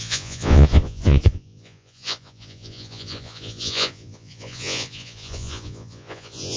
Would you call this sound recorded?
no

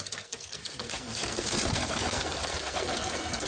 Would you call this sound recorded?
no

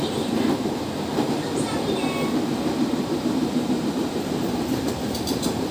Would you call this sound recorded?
no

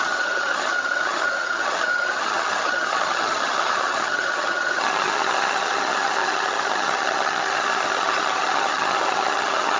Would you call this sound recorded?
no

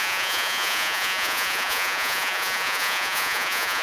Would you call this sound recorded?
no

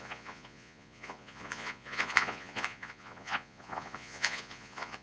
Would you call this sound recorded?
no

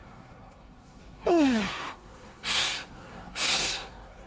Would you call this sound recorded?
no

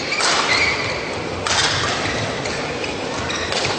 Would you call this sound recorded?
yes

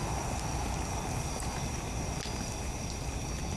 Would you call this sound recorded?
yes